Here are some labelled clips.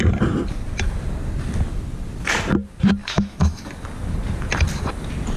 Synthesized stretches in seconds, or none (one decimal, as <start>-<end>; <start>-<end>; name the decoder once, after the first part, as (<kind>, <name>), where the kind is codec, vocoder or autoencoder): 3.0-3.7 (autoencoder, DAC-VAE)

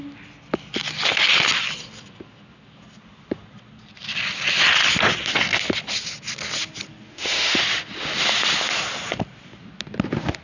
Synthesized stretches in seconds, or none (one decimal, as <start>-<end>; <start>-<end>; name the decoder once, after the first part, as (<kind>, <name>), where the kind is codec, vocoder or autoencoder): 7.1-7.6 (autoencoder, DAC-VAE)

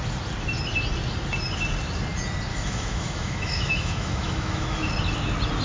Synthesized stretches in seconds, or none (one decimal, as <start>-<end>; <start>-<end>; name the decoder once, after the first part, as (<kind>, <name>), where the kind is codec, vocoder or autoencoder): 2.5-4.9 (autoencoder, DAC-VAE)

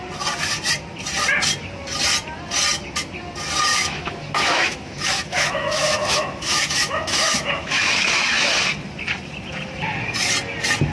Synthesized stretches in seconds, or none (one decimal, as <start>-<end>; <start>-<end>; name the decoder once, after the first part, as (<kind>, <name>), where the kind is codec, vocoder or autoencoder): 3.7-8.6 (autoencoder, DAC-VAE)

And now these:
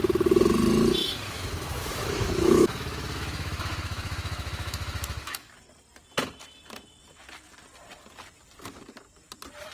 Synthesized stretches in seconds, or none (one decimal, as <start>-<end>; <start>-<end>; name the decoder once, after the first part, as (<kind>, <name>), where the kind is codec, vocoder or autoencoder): 1.0-5.5 (autoencoder, DAC-VAE)

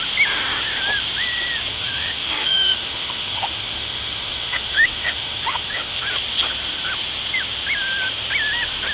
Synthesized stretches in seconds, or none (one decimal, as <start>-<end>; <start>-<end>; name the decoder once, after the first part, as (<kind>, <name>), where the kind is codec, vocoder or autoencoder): 1.7-6.0 (autoencoder, DAC-VAE)

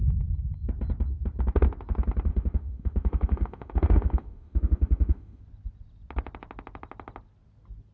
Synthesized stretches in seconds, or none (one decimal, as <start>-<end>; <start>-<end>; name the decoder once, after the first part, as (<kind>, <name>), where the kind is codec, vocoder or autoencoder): 2.3-5.4 (autoencoder, DAC-VAE)

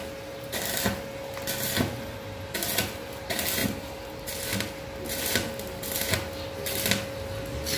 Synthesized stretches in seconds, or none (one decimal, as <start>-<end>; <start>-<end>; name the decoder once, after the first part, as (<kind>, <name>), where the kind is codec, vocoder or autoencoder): none